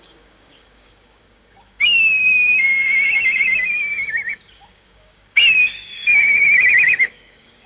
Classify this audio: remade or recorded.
remade